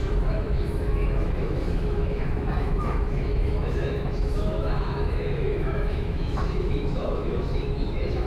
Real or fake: fake